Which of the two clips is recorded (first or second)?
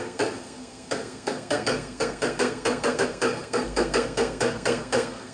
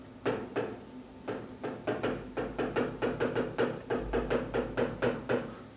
second